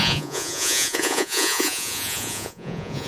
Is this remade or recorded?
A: remade